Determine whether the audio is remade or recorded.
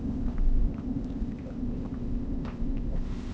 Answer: remade